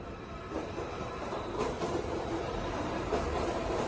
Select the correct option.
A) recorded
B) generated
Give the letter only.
B